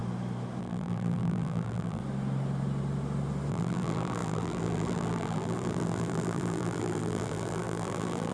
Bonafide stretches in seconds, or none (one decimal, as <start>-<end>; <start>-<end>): 0.0-0.6; 2.0-3.5